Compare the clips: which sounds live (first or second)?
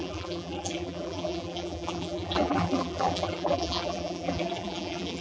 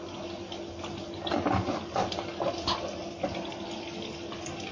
second